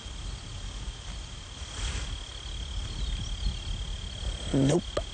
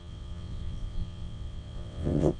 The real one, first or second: first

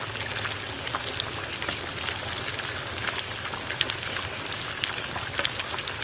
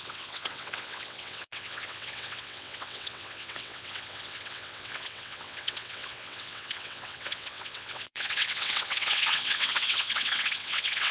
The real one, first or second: first